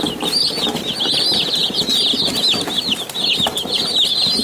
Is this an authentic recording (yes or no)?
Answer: yes